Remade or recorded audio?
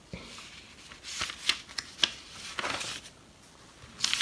recorded